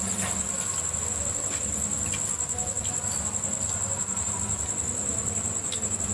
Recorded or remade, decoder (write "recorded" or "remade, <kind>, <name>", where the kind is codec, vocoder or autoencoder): recorded